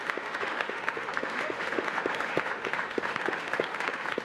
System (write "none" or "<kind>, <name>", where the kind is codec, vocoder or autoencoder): autoencoder, DAC-VAE